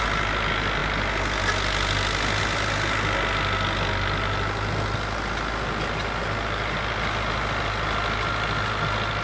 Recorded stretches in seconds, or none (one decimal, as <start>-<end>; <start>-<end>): 0.0-9.2